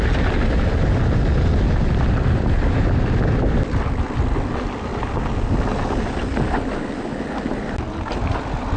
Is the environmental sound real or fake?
real